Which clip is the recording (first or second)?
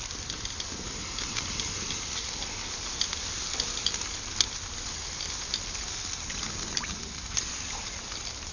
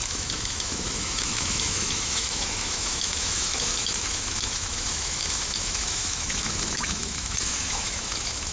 first